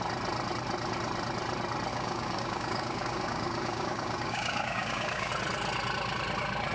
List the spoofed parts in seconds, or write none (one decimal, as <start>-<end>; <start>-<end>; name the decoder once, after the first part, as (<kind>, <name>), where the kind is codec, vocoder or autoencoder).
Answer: 1.9-5.3 (codec, DAC)